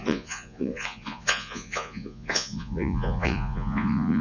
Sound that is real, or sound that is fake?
fake